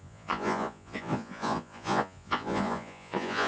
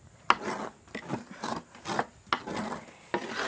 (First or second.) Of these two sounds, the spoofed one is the first